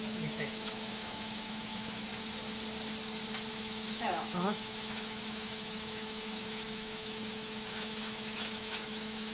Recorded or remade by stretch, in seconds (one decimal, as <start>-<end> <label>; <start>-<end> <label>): 0.0-2.1 remade; 2.1-3.5 recorded; 3.5-9.3 remade

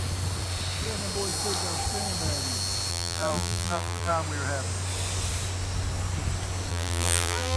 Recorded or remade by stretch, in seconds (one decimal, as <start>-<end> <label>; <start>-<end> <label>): 0.0-2.9 recorded; 2.9-4.1 remade; 4.1-6.7 recorded; 6.7-7.6 remade

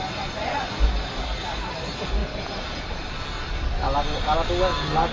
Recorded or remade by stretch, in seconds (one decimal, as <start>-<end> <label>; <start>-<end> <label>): 0.0-0.4 recorded; 0.4-0.9 remade; 0.9-5.1 recorded

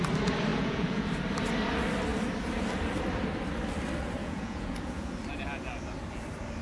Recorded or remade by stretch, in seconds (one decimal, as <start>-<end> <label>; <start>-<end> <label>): 0.0-0.5 recorded; 0.5-1.1 remade; 1.1-4.2 recorded; 4.2-5.1 remade; 5.1-6.6 recorded